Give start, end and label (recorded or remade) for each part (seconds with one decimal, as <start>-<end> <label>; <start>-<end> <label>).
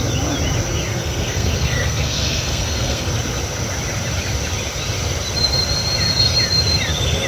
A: 0.0-0.9 recorded; 0.9-3.1 remade; 3.1-7.3 recorded